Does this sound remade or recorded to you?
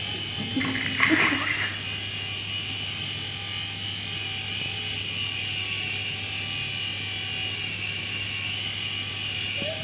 recorded